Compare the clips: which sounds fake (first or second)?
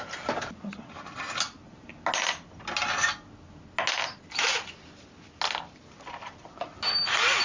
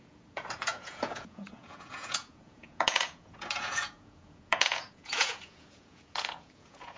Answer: second